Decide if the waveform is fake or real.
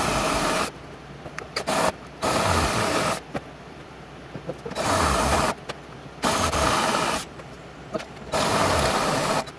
fake